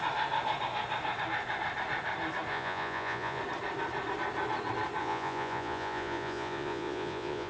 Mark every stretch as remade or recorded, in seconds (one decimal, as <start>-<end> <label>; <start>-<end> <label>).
0.0-2.5 recorded; 2.5-3.4 remade; 3.4-5.0 recorded; 5.0-7.5 remade